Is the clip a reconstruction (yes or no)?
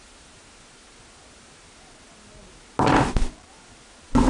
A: no